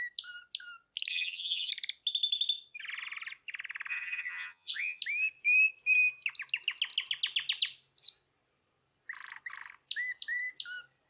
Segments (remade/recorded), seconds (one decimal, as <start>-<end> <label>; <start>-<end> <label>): 0.0-1.1 recorded; 1.1-1.7 remade; 1.7-3.9 recorded; 3.9-5.0 remade; 5.0-11.1 recorded